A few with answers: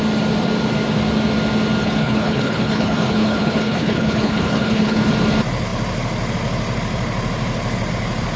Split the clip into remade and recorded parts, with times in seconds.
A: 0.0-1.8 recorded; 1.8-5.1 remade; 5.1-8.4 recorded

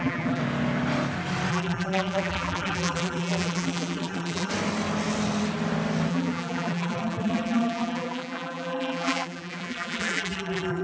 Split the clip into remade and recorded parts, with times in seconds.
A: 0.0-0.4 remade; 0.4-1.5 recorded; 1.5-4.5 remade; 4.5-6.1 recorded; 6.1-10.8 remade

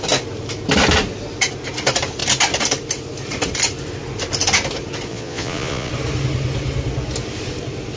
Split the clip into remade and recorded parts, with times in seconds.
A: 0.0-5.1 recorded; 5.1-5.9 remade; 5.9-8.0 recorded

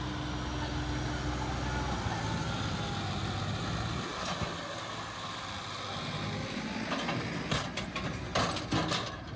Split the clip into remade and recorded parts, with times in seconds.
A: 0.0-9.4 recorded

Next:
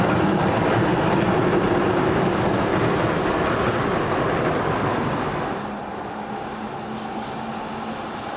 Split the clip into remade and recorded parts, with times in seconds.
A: 0.0-8.4 recorded

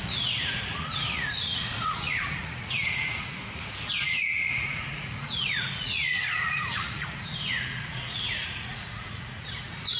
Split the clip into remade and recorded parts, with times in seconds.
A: 0.0-10.0 remade

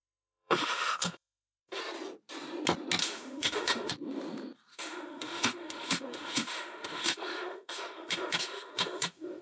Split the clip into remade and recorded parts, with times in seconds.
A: 0.0-1.8 remade; 1.8-3.0 recorded; 3.0-3.9 remade; 3.9-4.7 recorded; 4.7-9.4 remade